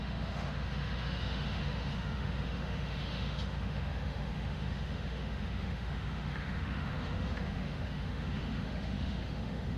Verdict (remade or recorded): remade